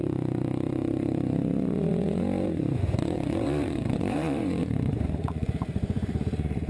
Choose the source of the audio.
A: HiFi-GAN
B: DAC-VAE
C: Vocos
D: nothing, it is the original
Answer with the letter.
C